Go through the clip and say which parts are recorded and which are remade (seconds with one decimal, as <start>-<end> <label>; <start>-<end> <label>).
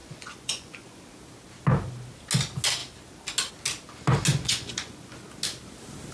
0.0-1.0 remade; 1.0-4.3 recorded; 4.3-5.2 remade; 5.2-6.1 recorded